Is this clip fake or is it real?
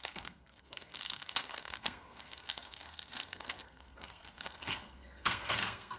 fake